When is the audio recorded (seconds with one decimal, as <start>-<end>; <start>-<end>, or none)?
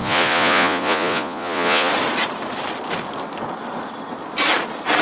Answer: 1.9-5.0